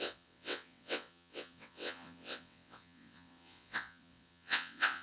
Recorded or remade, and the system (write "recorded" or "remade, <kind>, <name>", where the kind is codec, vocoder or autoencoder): remade, vocoder, WaveNeXt